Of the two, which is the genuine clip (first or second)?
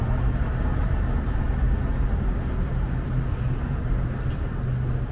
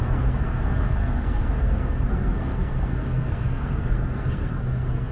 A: first